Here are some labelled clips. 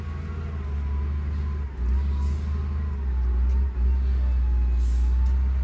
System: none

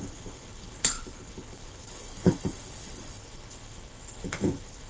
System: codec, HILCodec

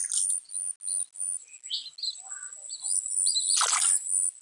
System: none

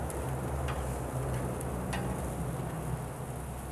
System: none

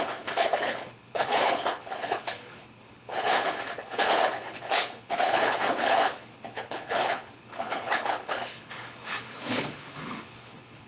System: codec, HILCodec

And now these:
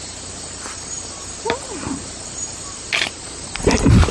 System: none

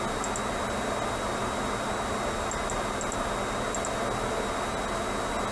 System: none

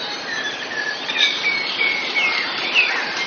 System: none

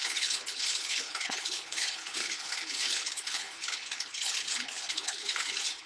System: codec, HILCodec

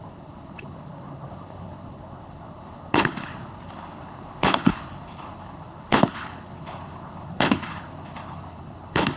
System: codec, HILCodec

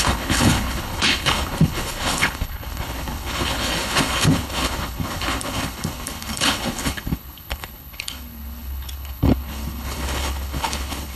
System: codec, HILCodec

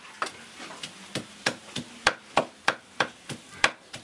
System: none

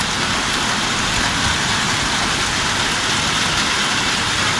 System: none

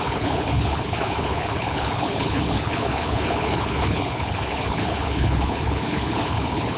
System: codec, HILCodec